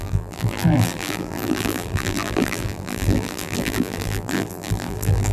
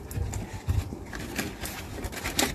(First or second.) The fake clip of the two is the first